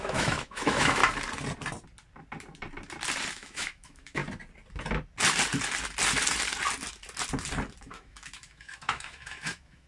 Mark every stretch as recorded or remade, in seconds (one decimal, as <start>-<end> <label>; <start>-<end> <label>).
0.0-1.0 remade; 1.0-3.3 recorded; 3.3-4.2 remade; 4.2-7.8 recorded; 7.8-9.9 remade